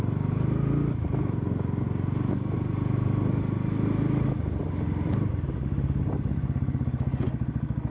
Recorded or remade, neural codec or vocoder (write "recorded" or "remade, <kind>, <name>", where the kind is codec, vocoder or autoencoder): recorded